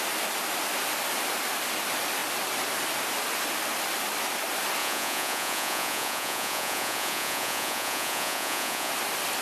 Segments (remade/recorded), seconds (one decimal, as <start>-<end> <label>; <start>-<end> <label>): 0.0-4.8 recorded; 4.8-8.9 remade; 8.9-9.4 recorded